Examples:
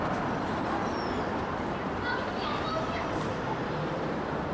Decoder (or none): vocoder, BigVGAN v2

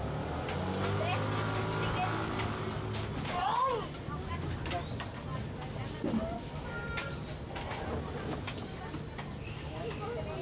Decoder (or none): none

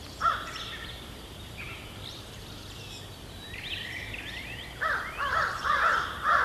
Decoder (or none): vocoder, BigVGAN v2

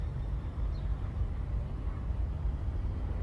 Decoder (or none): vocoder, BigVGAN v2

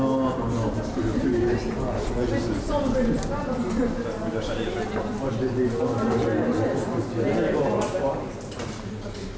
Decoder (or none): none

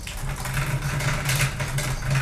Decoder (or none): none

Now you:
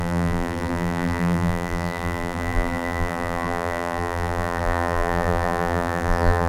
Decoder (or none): vocoder, BigVGAN v2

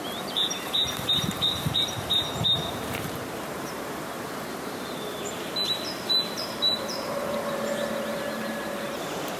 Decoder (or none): vocoder, BigVGAN v2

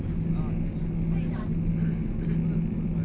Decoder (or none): none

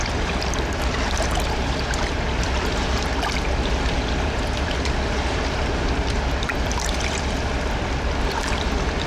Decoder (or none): vocoder, BigVGAN v2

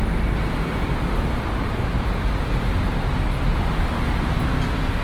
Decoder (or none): none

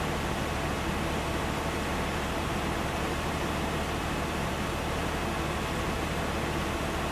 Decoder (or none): none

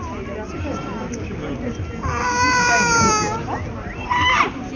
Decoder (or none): none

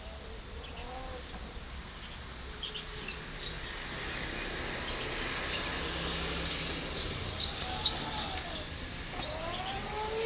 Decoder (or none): none